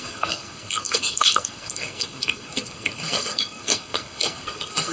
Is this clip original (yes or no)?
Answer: no